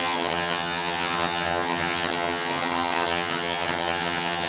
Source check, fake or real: fake